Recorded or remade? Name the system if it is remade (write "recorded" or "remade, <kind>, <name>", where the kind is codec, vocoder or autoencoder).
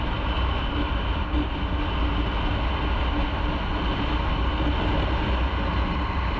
recorded